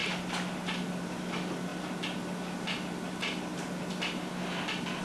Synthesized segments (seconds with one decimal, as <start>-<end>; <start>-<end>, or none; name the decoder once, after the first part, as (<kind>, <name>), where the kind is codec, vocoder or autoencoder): none